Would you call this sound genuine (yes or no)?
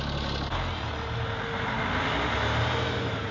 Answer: yes